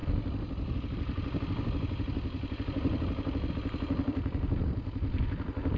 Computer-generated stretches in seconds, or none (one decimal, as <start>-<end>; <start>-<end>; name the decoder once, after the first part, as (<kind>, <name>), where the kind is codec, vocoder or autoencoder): none